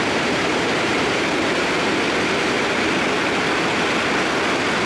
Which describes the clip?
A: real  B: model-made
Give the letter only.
A